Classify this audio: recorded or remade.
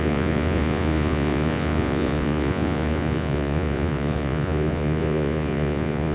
remade